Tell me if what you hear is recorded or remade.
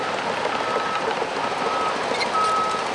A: remade